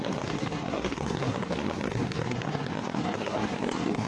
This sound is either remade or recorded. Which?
remade